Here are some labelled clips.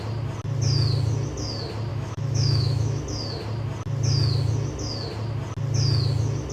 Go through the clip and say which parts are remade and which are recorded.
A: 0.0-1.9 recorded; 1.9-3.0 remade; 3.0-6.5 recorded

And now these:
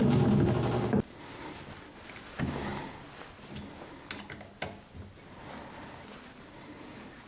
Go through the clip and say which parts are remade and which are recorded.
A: 0.0-7.3 recorded

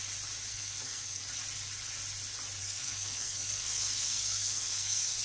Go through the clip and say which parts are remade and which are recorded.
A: 0.0-0.5 recorded; 0.5-1.2 remade; 1.2-2.6 recorded; 2.6-5.2 remade

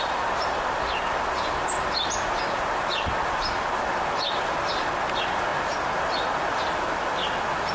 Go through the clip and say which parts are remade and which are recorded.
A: 0.0-7.7 recorded